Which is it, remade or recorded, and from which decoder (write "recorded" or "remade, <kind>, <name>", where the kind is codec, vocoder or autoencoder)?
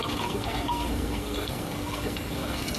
remade, codec, SNAC